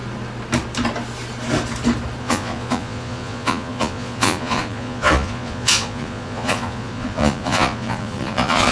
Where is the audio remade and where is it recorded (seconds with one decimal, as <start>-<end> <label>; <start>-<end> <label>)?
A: 0.0-2.2 recorded; 2.2-8.7 remade